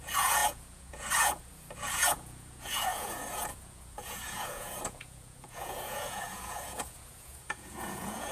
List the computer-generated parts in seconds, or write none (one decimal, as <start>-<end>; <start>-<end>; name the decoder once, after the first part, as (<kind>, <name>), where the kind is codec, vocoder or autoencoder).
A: 0.0-8.3 (vocoder, Vocos)